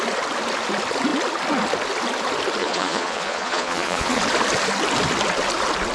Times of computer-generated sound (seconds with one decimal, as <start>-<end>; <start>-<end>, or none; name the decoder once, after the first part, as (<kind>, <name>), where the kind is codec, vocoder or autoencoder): 2.6-4.2 (vocoder, Vocos)